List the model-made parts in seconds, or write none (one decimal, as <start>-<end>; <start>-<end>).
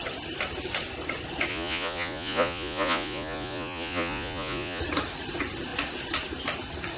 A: 1.5-4.8